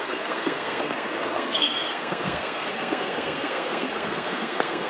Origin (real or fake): fake